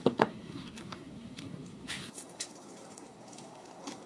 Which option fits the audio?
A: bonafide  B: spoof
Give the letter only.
B